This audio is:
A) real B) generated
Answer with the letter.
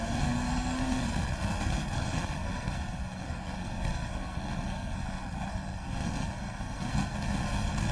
B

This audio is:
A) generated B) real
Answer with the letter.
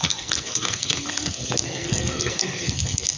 A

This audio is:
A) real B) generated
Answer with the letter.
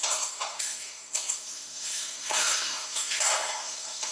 B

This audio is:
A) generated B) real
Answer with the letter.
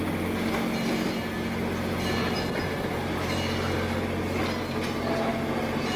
B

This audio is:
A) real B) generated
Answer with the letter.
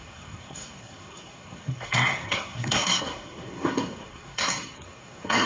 B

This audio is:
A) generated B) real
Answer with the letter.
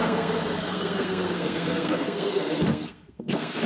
A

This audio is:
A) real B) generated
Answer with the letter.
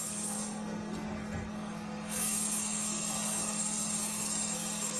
B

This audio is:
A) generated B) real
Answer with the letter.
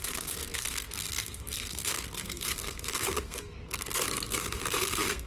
A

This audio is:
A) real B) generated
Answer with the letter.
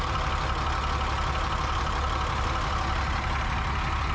A